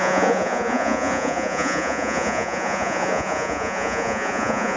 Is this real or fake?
fake